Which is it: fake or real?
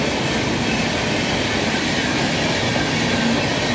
real